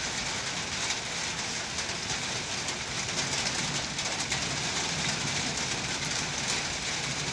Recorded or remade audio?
recorded